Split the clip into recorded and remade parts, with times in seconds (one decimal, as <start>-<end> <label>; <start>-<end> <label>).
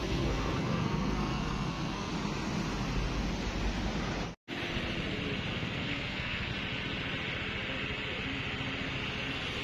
0.0-2.1 remade; 2.1-5.5 recorded; 5.5-6.5 remade; 6.5-9.6 recorded